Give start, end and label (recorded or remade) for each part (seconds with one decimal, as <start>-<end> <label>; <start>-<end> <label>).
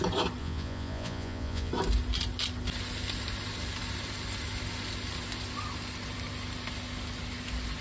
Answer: 0.0-0.4 recorded; 0.4-1.7 remade; 1.7-7.8 recorded